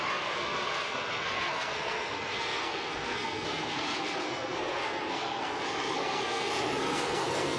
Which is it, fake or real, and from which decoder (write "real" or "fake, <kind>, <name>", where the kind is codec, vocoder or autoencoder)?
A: fake, codec, SNAC